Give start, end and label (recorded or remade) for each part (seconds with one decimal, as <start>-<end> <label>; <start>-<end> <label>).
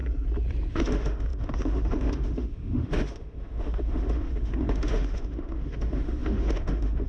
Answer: 0.0-0.7 recorded; 0.7-7.1 remade